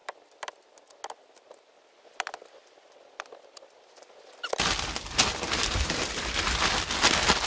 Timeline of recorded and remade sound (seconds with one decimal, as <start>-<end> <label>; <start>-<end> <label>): 0.0-7.5 recorded